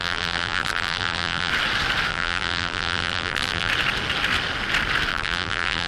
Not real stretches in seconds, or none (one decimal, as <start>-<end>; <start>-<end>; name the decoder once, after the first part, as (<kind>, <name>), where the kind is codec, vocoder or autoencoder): 0.0-1.5 (vocoder, BigVGAN v2); 2.1-3.7; 5.1-5.9